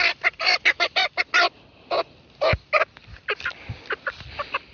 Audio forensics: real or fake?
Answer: real